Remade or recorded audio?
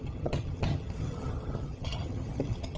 remade